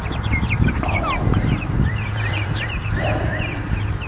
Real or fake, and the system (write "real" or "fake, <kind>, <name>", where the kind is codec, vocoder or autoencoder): fake, vocoder, BigVGAN v2